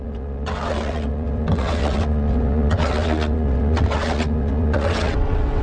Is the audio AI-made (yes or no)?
yes